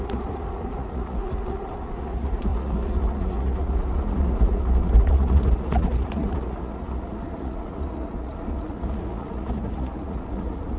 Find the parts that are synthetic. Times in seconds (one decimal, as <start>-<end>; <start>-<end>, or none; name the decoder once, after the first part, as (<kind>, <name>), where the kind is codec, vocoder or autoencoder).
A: 0.0-10.8 (vocoder, Vocos)